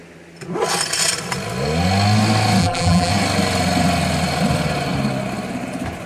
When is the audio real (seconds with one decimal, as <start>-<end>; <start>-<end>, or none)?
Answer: 0.0-2.6; 3.1-6.1